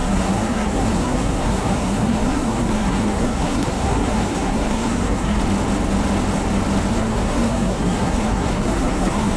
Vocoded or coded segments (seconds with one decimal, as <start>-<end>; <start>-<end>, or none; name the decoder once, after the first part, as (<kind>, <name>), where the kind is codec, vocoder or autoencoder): 0.0-5.4 (codec, SNAC); 6.9-9.4